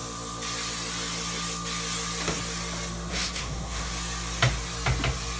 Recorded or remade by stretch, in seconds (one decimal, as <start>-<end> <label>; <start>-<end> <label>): 0.0-3.1 recorded; 3.1-3.9 remade; 3.9-5.4 recorded